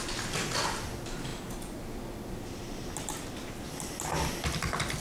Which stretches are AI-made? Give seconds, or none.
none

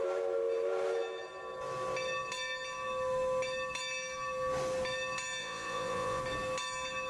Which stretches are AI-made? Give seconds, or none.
5.4-6.2 (vocoder, Vocos)

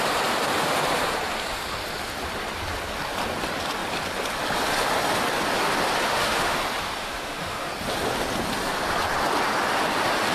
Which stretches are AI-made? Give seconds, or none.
6.1-6.6 (autoencoder, DAC-VAE); 7.0-7.7